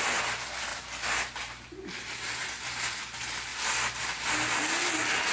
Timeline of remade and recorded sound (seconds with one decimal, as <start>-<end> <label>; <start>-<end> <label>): 0.0-5.3 recorded